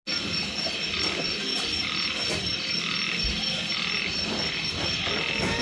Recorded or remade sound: recorded